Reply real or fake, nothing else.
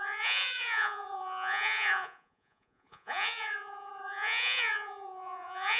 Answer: fake